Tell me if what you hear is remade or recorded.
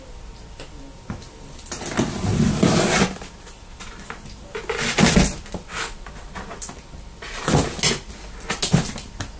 recorded